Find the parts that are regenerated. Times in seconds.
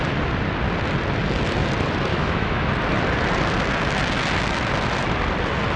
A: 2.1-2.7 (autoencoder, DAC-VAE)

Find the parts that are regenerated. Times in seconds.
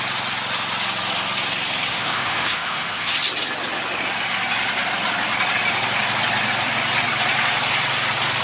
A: 1.9-3.1 (autoencoder, DAC-VAE)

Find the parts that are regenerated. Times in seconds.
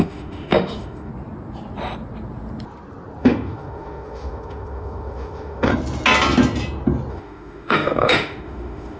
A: 0.0-1.1 (autoencoder, DAC-VAE); 3.2-5.7; 7.1-9.0